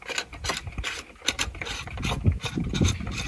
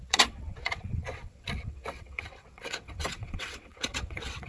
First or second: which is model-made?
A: second